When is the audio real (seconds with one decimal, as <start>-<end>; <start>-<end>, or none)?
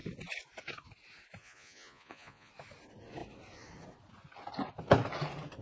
0.0-1.4; 2.5-5.6